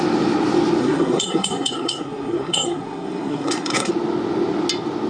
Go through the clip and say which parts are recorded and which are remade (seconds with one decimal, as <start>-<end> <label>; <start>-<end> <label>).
0.0-0.8 recorded; 0.8-3.9 remade; 3.9-5.1 recorded